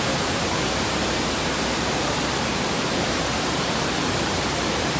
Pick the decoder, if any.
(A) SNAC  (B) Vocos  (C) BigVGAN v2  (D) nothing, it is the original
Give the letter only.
C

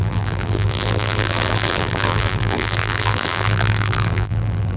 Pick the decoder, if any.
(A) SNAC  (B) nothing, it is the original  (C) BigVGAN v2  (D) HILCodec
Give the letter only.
C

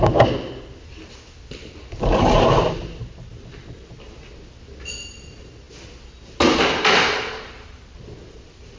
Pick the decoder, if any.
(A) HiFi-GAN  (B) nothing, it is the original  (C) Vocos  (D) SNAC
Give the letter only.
B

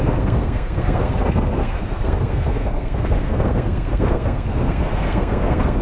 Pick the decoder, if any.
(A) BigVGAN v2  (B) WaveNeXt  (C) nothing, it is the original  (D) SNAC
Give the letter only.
D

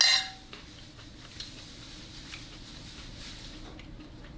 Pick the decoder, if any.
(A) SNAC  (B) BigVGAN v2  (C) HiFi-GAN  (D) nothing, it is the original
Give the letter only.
D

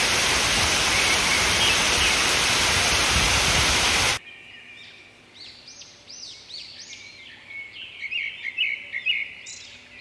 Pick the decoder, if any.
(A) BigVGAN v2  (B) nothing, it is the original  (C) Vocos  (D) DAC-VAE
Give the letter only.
B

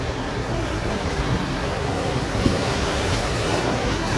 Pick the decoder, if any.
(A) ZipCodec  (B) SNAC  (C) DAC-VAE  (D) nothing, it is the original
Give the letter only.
B